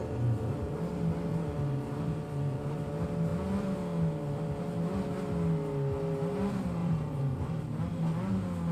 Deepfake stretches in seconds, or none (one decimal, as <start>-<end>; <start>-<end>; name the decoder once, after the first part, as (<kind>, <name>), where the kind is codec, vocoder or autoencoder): 0.0-0.9 (vocoder, BigVGAN v2); 1.3-2.9; 6.8-7.6